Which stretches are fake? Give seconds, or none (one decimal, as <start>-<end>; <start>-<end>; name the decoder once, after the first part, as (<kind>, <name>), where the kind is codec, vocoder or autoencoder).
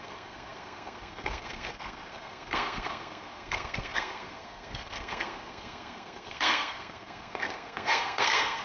0.0-8.6 (codec, SNAC)